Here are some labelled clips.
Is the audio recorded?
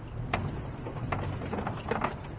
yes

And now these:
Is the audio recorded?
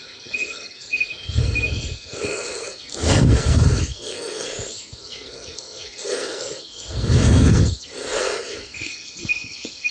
no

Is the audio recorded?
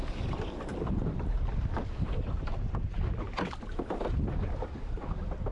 yes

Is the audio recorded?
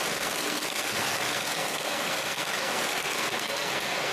no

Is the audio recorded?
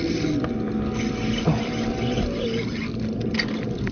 yes